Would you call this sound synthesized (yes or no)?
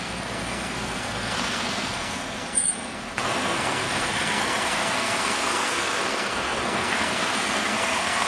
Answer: yes